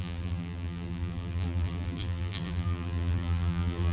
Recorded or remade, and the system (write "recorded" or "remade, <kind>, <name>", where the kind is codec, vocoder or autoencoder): remade, vocoder, BigVGAN v2